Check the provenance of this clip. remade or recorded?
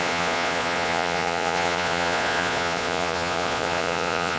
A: remade